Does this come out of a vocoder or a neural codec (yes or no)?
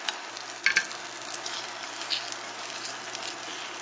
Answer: no